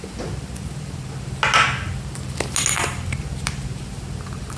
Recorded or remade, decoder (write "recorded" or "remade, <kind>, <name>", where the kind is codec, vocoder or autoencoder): recorded